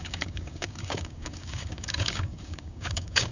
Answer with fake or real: fake